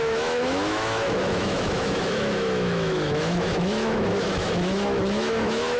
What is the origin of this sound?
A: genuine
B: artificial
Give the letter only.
B